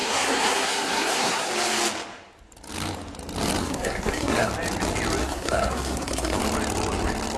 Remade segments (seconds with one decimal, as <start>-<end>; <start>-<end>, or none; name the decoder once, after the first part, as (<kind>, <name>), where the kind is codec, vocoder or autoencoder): 0.0-1.5 (codec, SNAC); 3.6-4.5; 5.2-6.4